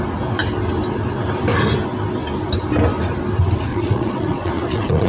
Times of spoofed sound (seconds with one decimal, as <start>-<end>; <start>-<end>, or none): 3.7-5.1